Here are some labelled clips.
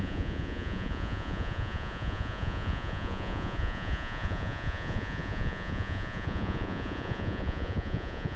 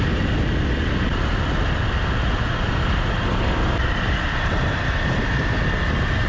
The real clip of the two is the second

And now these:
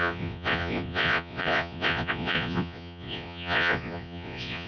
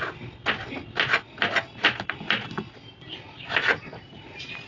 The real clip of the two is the second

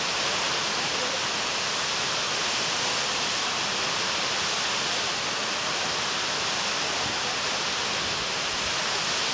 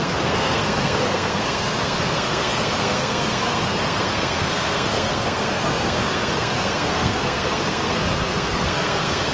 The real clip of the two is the first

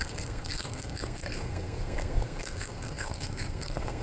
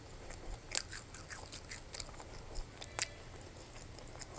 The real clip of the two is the second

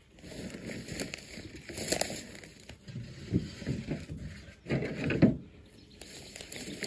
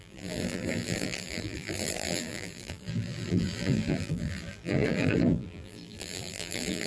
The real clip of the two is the first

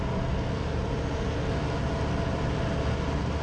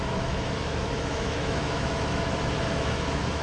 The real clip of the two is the first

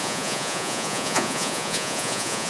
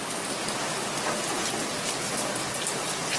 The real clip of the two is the second